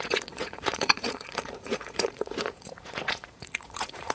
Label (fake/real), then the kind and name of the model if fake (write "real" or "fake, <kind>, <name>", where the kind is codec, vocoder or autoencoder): fake, vocoder, Vocos